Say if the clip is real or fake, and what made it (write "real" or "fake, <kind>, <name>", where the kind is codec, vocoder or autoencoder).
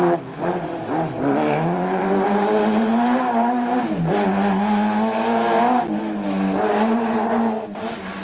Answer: real